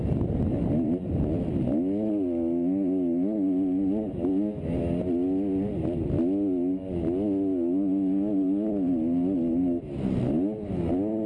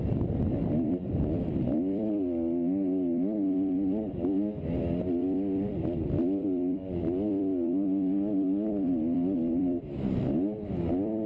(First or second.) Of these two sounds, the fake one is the second